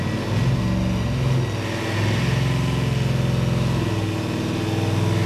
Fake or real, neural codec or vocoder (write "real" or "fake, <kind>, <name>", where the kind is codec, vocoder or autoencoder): real